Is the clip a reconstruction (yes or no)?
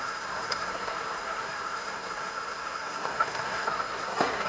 yes